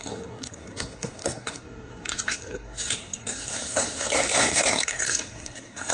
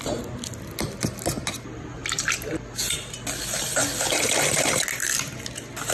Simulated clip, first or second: first